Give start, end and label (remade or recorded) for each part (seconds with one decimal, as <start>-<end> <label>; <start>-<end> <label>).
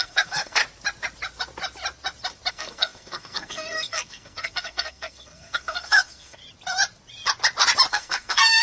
0.0-0.6 remade; 0.6-2.5 recorded; 2.5-6.4 remade; 6.4-7.9 recorded; 7.9-8.6 remade